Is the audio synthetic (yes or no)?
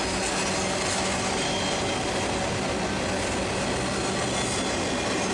no